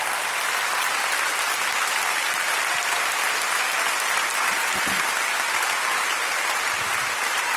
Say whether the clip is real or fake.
real